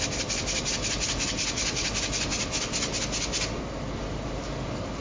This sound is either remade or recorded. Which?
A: recorded